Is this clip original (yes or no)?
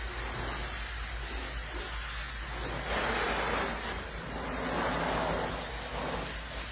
yes